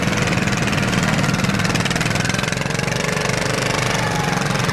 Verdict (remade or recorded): remade